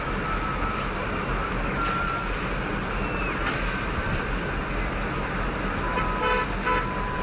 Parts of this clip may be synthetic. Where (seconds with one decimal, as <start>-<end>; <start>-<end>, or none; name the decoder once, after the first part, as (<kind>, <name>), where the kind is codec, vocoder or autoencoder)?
none